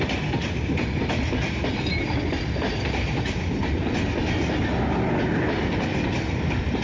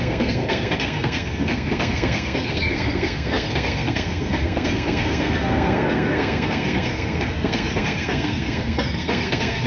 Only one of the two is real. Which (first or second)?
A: first